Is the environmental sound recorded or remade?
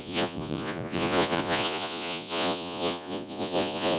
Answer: remade